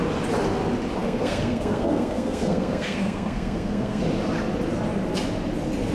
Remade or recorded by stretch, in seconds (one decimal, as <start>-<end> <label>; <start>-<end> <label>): 0.0-1.0 recorded; 1.0-4.0 remade; 4.0-5.9 recorded

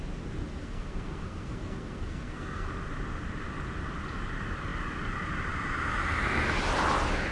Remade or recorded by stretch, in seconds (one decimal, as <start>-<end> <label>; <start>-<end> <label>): 0.0-0.4 recorded; 0.4-2.7 remade; 2.7-7.3 recorded